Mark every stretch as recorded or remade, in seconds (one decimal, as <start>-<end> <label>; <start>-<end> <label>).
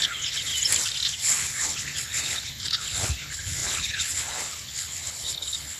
0.0-0.5 remade; 0.5-1.2 recorded; 1.2-5.8 remade